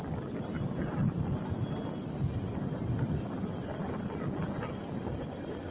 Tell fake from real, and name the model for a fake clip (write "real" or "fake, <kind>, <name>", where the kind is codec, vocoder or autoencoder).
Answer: real